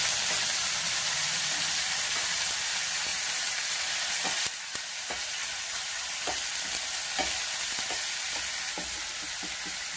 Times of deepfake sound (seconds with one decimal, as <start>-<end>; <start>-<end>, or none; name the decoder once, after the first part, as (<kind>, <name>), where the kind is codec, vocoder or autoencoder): none